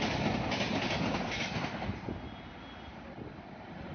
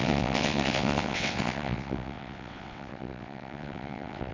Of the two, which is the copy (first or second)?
second